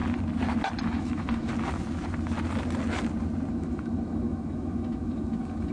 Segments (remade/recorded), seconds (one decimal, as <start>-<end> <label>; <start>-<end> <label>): 0.0-0.8 recorded; 0.8-1.5 remade; 1.5-3.5 recorded; 3.5-5.7 remade